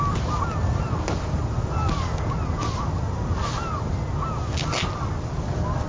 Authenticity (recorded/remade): recorded